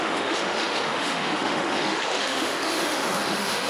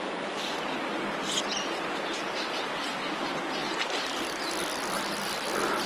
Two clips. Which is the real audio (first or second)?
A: second